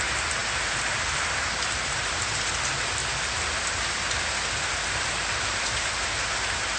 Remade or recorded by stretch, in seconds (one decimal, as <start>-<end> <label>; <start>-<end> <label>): 0.0-3.0 remade; 3.0-4.9 recorded; 4.9-6.8 remade